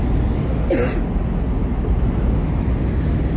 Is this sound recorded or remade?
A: recorded